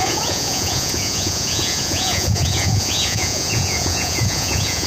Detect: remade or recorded remade